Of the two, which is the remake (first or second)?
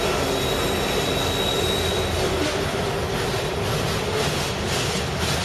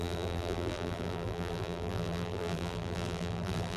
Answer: second